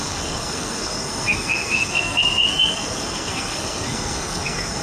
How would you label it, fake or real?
fake